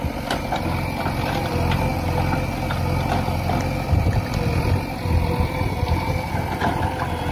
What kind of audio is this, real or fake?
real